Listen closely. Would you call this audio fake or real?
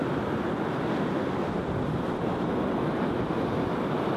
real